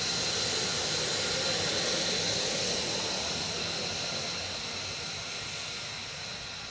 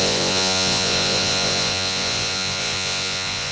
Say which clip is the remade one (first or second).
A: second